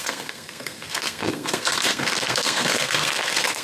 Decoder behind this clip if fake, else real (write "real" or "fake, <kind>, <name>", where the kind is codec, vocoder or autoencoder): fake, codec, SNAC